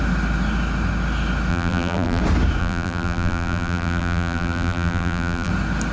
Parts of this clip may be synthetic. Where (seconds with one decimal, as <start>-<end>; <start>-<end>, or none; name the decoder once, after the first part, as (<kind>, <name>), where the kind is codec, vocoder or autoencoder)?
1.5-2.2 (vocoder, BigVGAN v2); 2.6-5.5